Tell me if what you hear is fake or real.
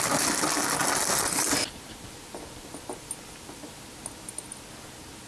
real